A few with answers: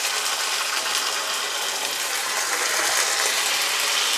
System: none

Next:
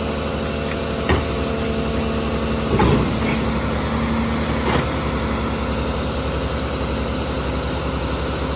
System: none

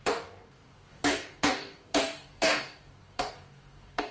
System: codec, DAC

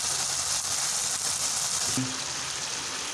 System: none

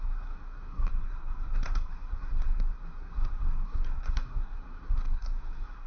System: codec, SNAC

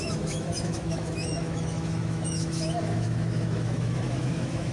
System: autoencoder, DAC-VAE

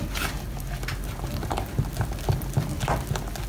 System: none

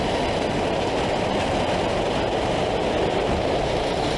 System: none